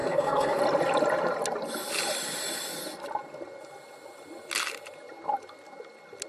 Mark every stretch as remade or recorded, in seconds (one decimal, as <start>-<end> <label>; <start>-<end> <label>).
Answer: 0.0-0.6 remade; 0.6-6.3 recorded